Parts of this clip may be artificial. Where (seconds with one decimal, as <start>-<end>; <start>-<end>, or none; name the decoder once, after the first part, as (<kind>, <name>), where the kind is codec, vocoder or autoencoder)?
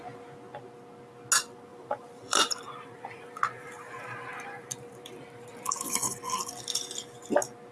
1.7-5.9 (vocoder, BigVGAN v2)